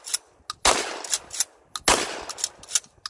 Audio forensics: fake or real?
real